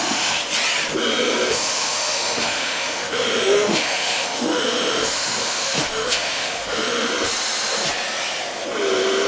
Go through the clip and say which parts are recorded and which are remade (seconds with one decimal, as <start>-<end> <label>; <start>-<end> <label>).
0.0-0.4 remade; 0.4-1.5 recorded; 1.5-7.1 remade; 7.1-9.3 recorded